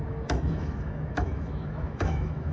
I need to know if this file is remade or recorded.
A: remade